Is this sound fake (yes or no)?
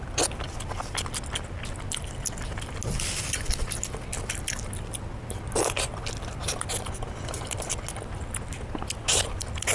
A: no